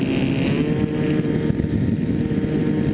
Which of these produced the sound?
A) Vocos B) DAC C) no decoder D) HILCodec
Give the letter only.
C